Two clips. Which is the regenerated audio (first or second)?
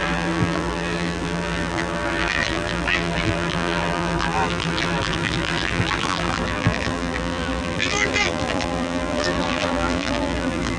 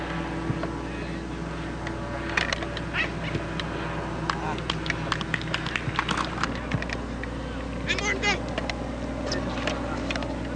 first